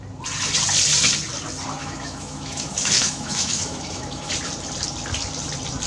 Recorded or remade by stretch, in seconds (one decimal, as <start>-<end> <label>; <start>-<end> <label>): 0.0-1.8 recorded; 1.8-4.3 remade; 4.3-5.9 recorded